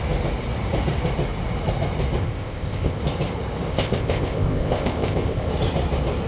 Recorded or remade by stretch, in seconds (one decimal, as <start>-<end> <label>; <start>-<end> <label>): 0.0-2.2 recorded; 2.2-3.0 remade; 3.0-3.7 recorded; 3.7-5.5 remade; 5.5-6.3 recorded